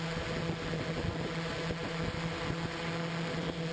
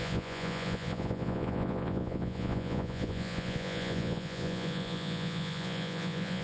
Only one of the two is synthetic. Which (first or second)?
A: second